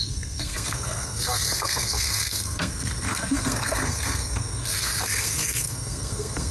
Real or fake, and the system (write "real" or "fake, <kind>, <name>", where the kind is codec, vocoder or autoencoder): fake, codec, SNAC